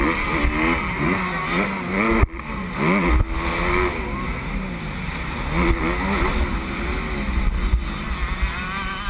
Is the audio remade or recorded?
recorded